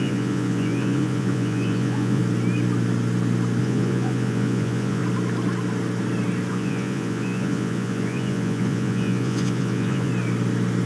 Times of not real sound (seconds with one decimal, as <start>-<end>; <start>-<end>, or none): 0.0-2.2; 3.6-5.0; 6.5-10.1